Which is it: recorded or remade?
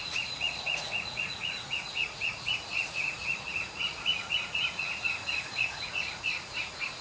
remade